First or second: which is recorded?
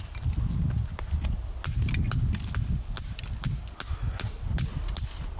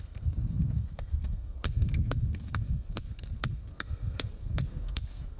first